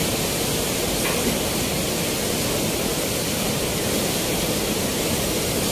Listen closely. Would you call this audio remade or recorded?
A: recorded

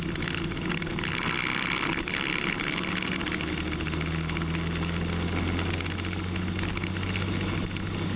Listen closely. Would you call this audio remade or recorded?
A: recorded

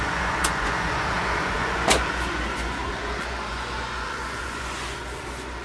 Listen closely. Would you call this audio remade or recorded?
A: remade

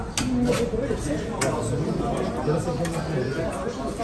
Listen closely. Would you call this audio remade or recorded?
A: recorded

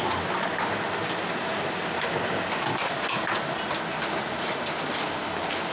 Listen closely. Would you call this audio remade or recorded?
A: recorded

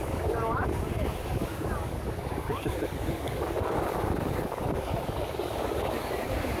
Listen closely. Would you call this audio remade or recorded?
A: remade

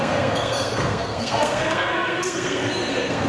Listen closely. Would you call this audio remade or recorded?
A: remade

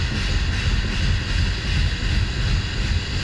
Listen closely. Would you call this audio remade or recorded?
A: recorded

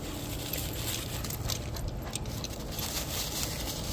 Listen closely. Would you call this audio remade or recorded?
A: recorded